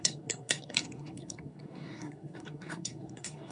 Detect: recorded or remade remade